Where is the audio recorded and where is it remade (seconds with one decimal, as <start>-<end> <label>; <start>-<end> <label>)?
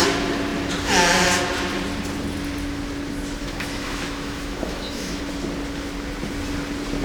0.0-3.4 recorded; 3.4-5.2 remade; 5.2-7.0 recorded